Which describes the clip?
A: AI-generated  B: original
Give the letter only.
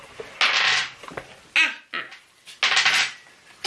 B